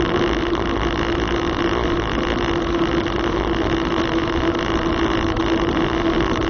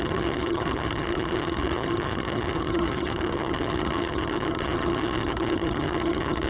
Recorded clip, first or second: first